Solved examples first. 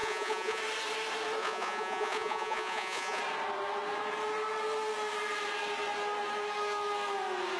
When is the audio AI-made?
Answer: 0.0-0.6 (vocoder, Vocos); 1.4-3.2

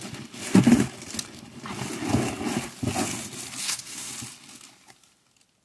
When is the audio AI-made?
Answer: 3.6-4.1 (codec, SNAC)

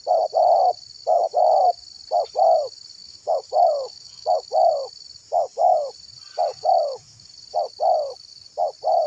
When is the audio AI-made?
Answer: 3.0-4.7 (autoencoder, DAC-VAE); 6.5-7.3

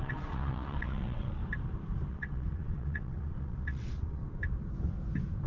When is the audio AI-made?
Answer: 0.0-1.4 (vocoder, WaveNeXt); 2.1-4.2

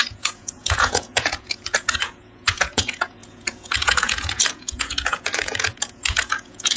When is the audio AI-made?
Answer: 0.0-6.8 (vocoder, Vocos)

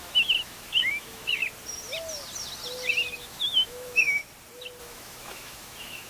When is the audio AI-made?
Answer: 0.0-1.4 (autoencoder, DAC-VAE); 3.2-4.2; 4.8-6.1

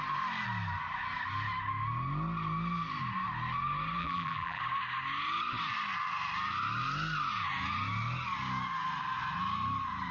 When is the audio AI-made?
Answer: 4.0-4.6 (vocoder, BigVGAN v2)